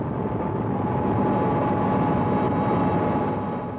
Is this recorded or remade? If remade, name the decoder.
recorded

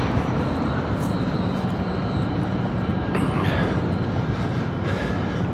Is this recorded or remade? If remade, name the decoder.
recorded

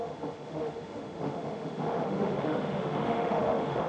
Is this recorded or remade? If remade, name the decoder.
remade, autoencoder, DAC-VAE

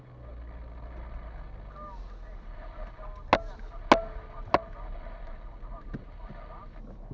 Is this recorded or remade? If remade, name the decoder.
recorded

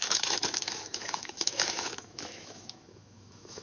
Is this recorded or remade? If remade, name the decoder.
remade, autoencoder, DAC-VAE